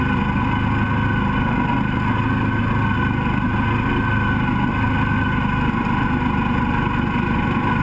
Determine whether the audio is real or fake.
real